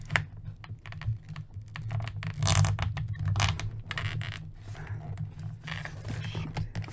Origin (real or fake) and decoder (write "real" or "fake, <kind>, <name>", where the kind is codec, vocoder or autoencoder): real